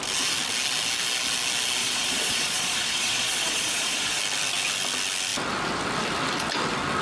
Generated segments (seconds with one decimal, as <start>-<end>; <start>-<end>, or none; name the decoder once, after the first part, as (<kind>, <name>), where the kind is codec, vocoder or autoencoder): 1.8-4.2 (vocoder, Vocos)